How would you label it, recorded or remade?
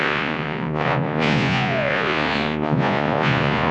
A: remade